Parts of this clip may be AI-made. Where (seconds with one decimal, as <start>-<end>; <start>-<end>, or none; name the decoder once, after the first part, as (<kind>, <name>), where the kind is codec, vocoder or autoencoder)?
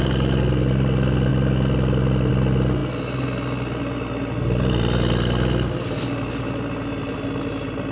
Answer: none